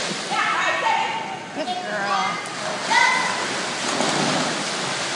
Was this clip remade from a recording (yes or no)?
no